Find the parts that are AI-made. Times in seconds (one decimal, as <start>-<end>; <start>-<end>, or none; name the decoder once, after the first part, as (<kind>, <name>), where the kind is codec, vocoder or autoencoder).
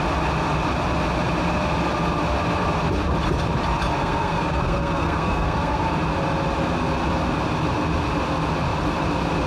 4.0-5.8 (codec, SNAC)